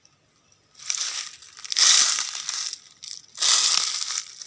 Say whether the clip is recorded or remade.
recorded